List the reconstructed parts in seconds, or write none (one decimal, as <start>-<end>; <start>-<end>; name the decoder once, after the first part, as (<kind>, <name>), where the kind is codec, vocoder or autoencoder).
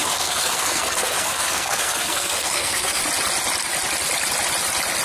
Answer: 0.0-3.0 (codec, SNAC)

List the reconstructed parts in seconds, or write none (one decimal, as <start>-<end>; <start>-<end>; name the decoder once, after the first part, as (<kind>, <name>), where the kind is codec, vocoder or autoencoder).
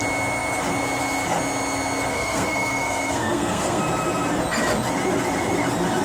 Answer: 2.1-3.8 (codec, SNAC)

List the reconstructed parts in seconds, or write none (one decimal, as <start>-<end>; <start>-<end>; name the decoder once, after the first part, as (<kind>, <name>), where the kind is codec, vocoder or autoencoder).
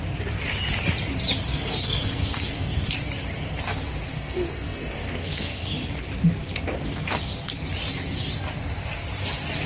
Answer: 1.5-2.9 (codec, SNAC); 4.1-5.7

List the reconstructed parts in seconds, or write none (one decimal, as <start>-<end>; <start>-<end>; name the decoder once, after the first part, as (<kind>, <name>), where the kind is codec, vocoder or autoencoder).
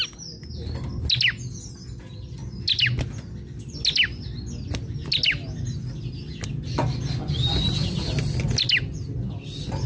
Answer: none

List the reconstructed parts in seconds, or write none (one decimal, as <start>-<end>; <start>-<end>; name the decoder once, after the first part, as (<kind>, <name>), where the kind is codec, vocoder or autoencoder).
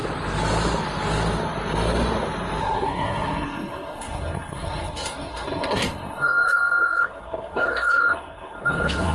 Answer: 2.6-9.1 (codec, SNAC)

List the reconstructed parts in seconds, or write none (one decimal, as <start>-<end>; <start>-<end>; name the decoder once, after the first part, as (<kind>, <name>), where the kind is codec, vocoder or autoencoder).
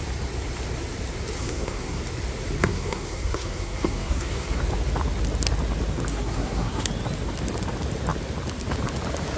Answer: 1.4-2.0 (codec, SNAC); 2.6-4.6; 6.1-6.9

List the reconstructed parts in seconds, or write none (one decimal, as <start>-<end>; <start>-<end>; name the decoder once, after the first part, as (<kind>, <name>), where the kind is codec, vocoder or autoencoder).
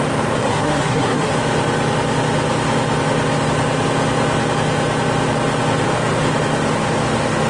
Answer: 0.4-1.3 (codec, SNAC)